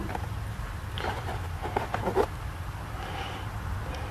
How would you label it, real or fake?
real